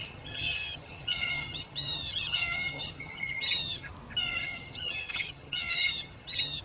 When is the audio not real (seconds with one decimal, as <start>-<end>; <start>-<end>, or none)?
0.0-3.9; 4.4-6.6